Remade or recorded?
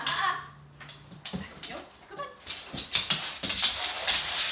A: recorded